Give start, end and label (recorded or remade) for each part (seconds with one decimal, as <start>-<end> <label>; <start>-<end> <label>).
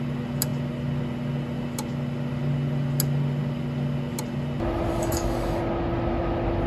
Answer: 0.0-4.9 recorded; 4.9-5.6 remade; 5.6-6.7 recorded